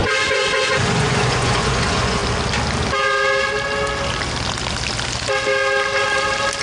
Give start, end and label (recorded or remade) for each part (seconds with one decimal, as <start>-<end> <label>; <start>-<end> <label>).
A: 0.0-2.2 remade; 2.2-6.6 recorded